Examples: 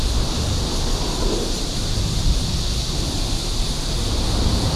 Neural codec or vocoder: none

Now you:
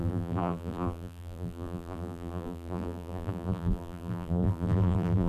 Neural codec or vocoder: vocoder, BigVGAN v2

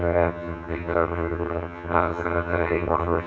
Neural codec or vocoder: vocoder, HiFi-GAN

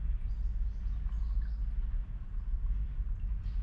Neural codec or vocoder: none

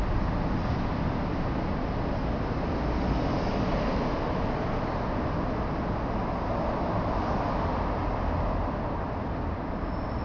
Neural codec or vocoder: none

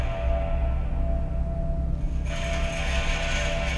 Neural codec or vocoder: none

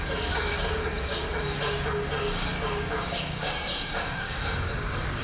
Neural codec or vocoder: codec, DAC